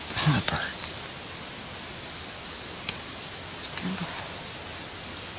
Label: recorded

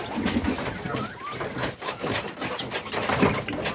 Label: recorded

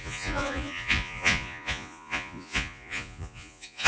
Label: remade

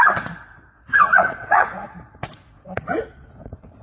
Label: remade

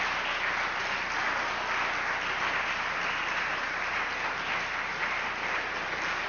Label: recorded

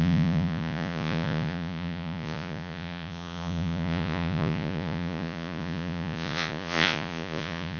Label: remade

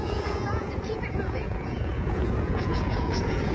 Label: remade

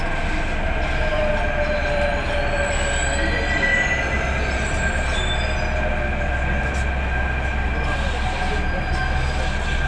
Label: recorded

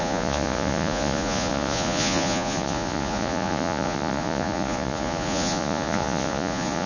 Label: remade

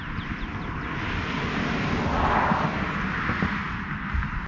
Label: recorded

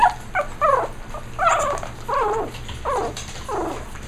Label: recorded